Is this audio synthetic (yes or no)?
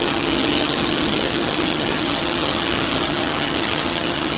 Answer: yes